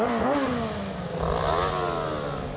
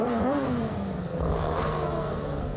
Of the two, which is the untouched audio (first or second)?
first